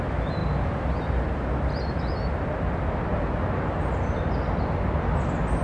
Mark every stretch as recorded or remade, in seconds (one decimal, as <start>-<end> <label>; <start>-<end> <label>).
0.0-5.6 recorded